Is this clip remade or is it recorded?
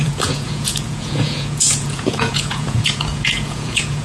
remade